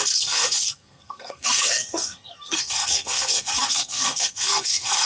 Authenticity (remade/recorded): remade